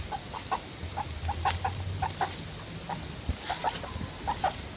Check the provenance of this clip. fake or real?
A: real